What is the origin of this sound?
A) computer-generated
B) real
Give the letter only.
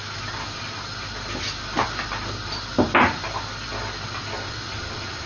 B